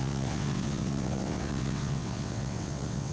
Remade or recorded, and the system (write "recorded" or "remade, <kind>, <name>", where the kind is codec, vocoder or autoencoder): remade, vocoder, WaveNeXt